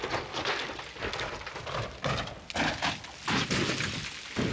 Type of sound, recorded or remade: recorded